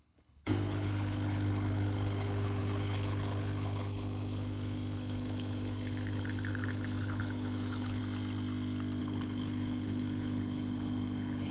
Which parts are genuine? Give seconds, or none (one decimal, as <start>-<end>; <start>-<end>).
8.0-9.0